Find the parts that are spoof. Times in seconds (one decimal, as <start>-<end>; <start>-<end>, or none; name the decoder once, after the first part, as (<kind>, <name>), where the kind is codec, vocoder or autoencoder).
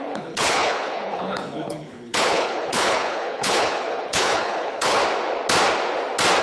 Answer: 0.0-5.0 (codec, HILCodec)